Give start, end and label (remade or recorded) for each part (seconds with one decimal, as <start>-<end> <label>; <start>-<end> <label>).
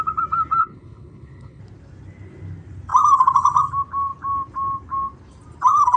0.0-0.6 recorded; 0.6-1.6 remade; 1.6-6.0 recorded